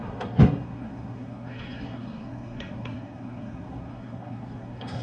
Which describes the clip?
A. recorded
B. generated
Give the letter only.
B